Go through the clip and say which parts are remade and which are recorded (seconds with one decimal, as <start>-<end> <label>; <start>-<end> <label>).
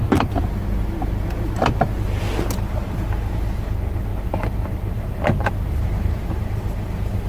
0.0-4.1 recorded; 4.1-7.3 remade